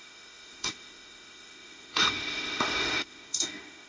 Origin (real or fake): fake